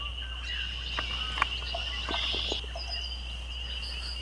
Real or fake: real